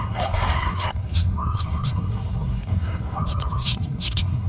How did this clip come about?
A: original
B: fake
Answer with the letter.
B